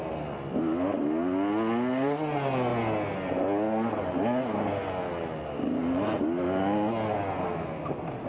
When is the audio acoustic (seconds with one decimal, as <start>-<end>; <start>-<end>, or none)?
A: 0.0-8.3